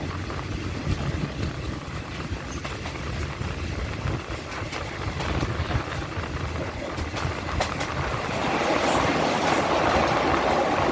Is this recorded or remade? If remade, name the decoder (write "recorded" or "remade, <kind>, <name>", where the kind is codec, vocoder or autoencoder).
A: recorded